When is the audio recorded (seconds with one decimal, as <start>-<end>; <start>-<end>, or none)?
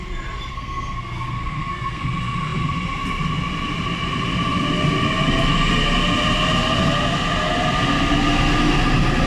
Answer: 0.0-0.5; 2.0-9.3